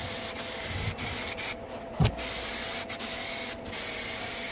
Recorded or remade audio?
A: recorded